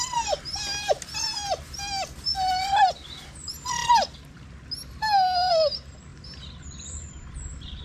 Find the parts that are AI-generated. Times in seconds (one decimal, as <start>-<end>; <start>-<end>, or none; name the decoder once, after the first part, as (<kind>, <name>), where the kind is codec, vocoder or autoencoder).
none